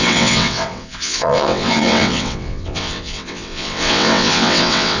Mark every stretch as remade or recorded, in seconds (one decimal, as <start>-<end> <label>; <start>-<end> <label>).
0.0-5.0 remade